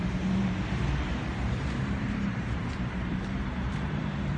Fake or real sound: fake